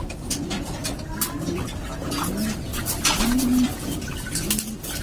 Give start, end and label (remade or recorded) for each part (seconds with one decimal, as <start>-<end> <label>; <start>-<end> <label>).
0.0-2.7 recorded; 2.7-3.2 remade; 3.2-5.0 recorded